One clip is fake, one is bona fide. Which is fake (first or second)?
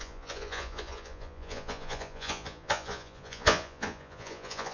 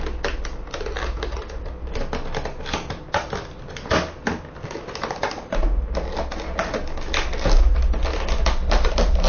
first